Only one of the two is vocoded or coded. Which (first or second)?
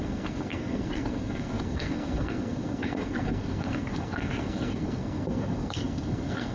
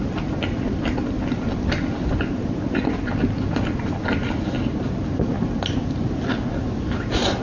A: first